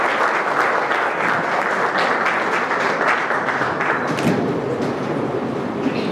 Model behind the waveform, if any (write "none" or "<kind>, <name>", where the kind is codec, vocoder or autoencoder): none